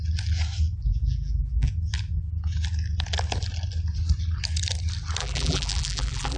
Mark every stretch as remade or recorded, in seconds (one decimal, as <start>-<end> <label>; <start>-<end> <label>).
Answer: 0.0-0.8 recorded; 0.8-1.7 remade; 1.7-5.2 recorded; 5.2-6.4 remade